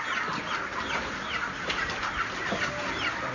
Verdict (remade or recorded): recorded